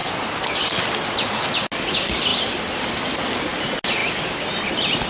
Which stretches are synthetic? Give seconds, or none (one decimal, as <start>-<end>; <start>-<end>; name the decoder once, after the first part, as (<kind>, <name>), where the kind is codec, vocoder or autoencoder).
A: 0.0-0.8 (vocoder, BigVGAN v2); 2.3-3.2; 4.0-5.1